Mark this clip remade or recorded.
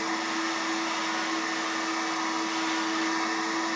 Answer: recorded